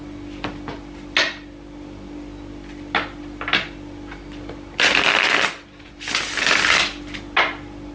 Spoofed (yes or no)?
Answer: no